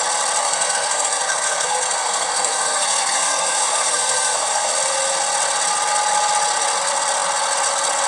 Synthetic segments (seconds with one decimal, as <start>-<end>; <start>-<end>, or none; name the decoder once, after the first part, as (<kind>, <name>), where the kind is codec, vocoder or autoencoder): 0.4-4.7 (codec, SNAC)